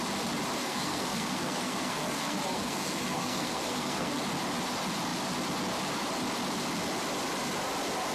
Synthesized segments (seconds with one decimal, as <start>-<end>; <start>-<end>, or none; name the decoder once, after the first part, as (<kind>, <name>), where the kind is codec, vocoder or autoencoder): 0.6-4.2 (codec, SNAC)